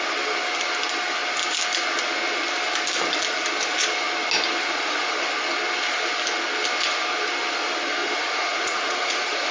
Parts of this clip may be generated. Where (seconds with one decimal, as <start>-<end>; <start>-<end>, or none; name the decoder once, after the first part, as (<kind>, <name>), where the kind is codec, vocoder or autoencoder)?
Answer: 4.6-5.1 (vocoder, Vocos); 8.0-9.5